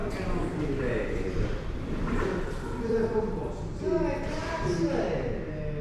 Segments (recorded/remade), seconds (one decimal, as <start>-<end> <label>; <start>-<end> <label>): 0.0-3.5 remade; 3.5-5.8 recorded